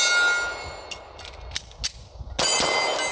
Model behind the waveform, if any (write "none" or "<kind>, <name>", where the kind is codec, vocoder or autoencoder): none